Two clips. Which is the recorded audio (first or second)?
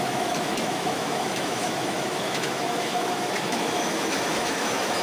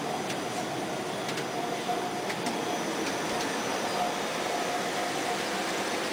second